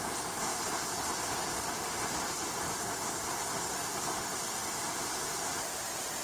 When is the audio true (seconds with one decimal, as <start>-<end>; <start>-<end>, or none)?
0.0-6.2